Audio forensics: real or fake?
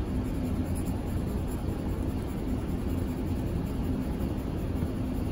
real